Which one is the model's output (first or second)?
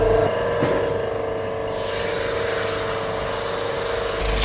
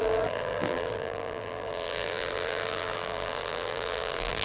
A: second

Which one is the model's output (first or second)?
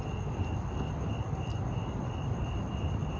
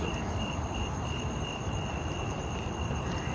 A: second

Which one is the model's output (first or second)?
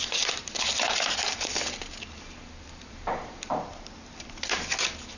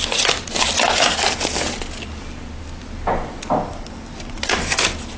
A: first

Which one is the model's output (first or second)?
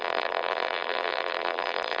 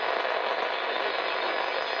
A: first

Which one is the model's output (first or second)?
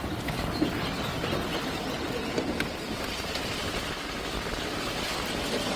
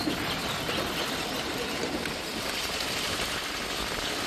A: second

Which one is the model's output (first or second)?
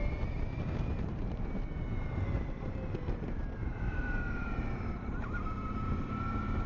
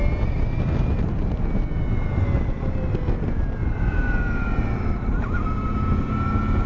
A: first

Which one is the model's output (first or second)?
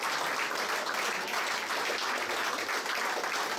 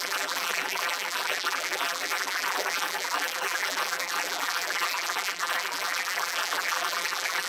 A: second